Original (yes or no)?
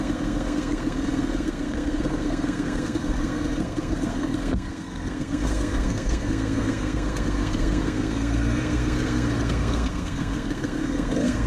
no